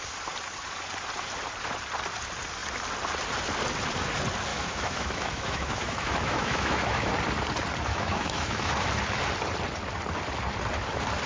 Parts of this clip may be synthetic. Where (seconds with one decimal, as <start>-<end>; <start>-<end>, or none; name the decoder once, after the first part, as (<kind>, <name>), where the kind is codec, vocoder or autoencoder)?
4.5-7.1 (autoencoder, DAC-VAE); 7.9-8.7